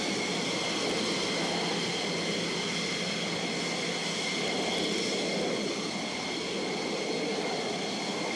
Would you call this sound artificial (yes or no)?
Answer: no